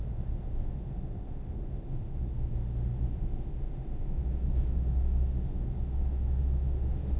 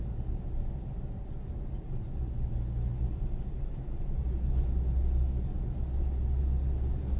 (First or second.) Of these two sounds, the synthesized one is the first